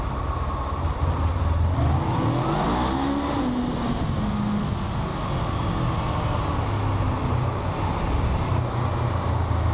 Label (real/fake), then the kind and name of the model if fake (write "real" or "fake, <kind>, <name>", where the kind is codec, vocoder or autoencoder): real